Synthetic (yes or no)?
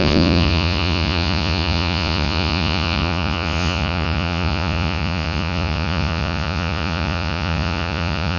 yes